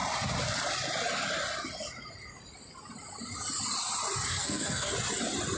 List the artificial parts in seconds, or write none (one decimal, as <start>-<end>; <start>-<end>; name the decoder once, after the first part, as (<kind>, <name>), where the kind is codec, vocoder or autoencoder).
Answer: 4.3-4.9 (codec, SNAC)